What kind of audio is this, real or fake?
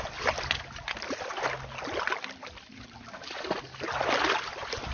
real